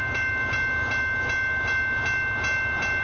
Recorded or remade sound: recorded